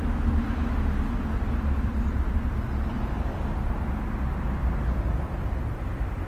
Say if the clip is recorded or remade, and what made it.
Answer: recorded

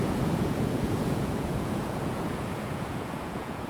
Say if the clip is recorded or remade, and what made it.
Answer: remade, vocoder, Vocos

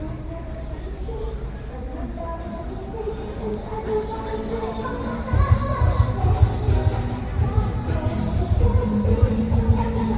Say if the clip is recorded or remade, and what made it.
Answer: remade, vocoder, BigVGAN v2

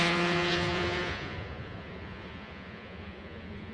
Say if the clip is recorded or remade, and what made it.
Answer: remade, vocoder, Vocos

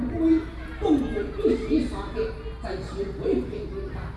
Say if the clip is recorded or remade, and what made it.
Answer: recorded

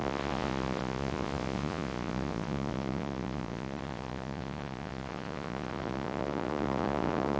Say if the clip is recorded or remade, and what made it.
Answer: remade, vocoder, Vocos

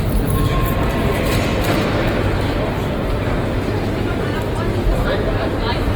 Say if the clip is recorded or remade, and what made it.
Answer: recorded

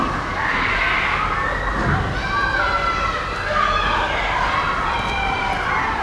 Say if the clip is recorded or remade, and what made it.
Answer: recorded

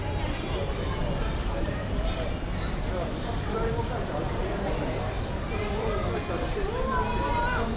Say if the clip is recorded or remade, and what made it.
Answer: recorded